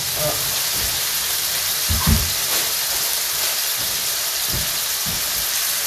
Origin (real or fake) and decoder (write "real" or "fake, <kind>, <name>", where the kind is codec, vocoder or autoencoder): fake, vocoder, BigVGAN v2